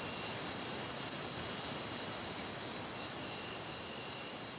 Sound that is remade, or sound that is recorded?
recorded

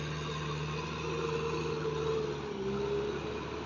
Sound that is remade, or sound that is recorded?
recorded